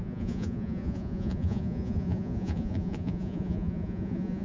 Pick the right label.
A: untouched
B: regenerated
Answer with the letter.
B